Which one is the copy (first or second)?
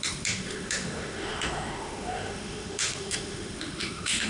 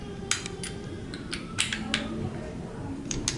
first